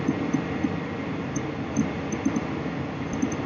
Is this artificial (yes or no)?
no